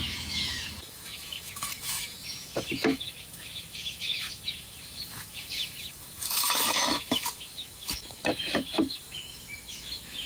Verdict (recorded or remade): remade